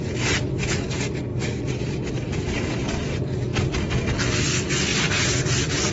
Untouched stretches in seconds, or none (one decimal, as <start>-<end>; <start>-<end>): 0.0-1.3; 2.8-3.5; 4.2-4.9; 5.4-5.9